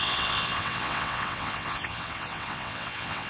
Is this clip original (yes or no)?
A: no